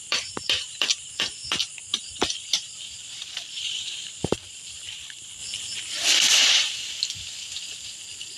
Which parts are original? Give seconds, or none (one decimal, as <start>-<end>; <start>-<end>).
1.4-2.0; 5.4-6.1

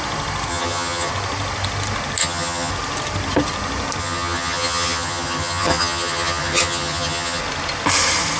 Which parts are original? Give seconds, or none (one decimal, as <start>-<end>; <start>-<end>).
0.0-0.5; 1.1-2.2; 2.7-4.0; 7.4-8.4

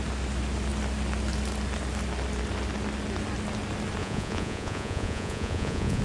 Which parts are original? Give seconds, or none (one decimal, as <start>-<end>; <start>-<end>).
0.0-4.0

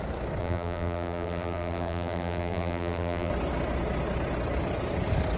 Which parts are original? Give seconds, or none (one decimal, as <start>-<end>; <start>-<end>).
0.0-0.4; 3.3-5.4

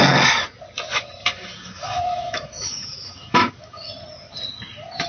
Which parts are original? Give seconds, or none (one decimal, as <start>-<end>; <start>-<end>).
0.0-0.9; 3.9-5.1